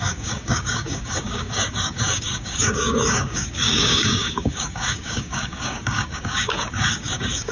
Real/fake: fake